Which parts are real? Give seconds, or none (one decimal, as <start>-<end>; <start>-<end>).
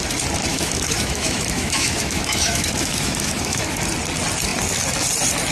0.0-0.5; 3.8-5.5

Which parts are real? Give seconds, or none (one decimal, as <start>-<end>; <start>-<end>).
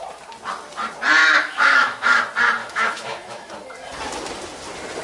0.0-1.2; 2.2-2.6; 3.5-5.0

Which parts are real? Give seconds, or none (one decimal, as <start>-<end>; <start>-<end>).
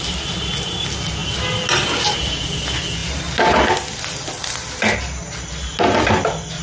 0.0-6.6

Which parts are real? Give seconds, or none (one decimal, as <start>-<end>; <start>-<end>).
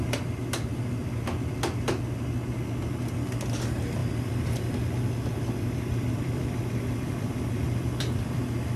0.0-0.7; 1.8-4.0